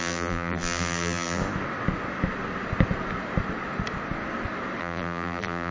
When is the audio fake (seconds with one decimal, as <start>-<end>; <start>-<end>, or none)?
0.0-1.4; 4.8-5.7